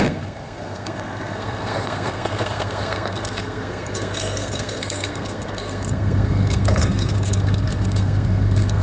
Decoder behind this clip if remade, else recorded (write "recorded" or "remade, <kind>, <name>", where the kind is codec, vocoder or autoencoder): remade, codec, SNAC